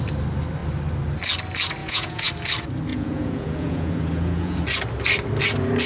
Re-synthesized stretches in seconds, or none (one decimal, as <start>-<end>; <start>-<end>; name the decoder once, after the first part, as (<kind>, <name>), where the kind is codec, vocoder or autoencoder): 1.8-2.3 (vocoder, Vocos); 2.9-4.6